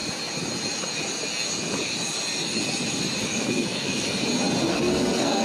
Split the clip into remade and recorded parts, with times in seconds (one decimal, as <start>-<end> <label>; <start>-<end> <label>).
0.0-3.2 recorded; 3.2-4.2 remade; 4.2-4.7 recorded; 4.7-5.4 remade